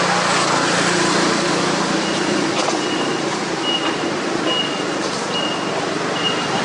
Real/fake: real